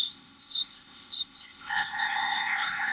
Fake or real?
fake